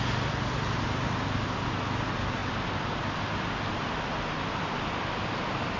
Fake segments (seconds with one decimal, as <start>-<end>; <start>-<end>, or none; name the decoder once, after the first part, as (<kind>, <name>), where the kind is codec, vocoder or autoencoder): none

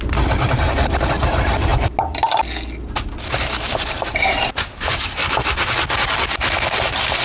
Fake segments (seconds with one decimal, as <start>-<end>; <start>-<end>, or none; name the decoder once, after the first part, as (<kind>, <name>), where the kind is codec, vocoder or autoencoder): 0.0-1.7 (vocoder, BigVGAN v2); 3.3-5.2

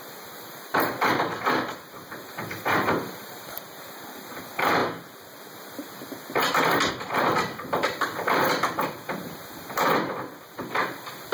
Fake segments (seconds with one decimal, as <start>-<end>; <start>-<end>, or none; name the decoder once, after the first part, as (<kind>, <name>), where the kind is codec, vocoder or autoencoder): 0.0-4.8 (vocoder, BigVGAN v2); 6.9-11.3

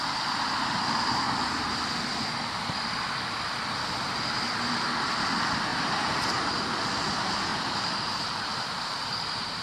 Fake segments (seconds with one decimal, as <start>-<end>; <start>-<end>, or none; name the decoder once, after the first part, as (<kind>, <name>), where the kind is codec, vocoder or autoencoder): 5.7-6.5 (vocoder, BigVGAN v2); 7.5-9.6

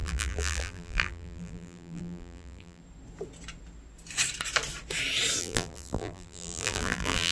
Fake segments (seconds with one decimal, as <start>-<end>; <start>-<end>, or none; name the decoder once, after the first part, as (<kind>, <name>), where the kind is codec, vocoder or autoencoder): 0.0-2.8 (vocoder, BigVGAN v2); 5.4-7.3